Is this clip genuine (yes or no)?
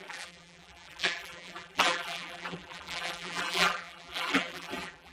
no